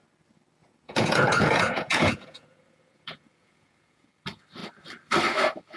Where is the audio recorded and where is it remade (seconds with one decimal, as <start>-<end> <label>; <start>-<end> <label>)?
0.0-0.6 recorded; 0.6-4.1 remade; 4.1-5.8 recorded